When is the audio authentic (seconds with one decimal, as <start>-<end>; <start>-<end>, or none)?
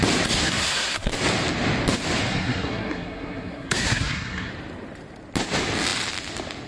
0.0-0.4; 1.1-2.3; 4.5-6.7